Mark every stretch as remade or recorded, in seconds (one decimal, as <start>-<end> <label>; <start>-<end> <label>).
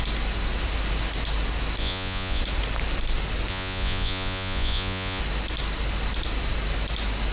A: 0.0-1.8 recorded; 1.8-2.4 remade; 2.4-3.5 recorded; 3.5-5.2 remade; 5.2-7.3 recorded